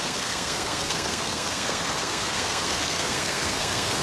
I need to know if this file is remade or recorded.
remade